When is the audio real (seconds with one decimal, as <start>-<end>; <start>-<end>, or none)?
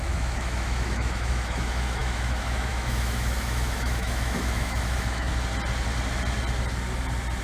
5.3-7.4